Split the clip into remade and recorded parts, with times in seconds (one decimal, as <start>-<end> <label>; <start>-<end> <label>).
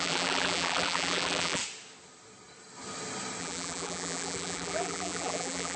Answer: 0.0-1.6 remade; 1.6-3.4 recorded; 3.4-5.8 remade